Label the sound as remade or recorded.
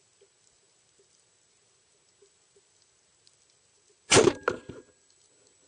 recorded